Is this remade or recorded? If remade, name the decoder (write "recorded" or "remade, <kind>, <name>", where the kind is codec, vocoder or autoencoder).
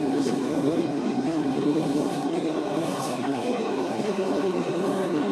remade, codec, SNAC